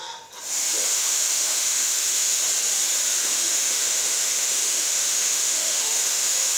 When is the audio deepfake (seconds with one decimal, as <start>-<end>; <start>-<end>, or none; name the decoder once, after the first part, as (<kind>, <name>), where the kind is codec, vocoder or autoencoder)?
0.8-2.4 (autoencoder, DAC-VAE); 3.2-6.6